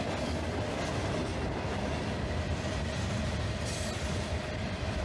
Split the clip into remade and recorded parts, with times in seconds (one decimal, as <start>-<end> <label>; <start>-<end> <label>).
0.0-1.3 remade; 1.3-4.3 recorded; 4.3-5.0 remade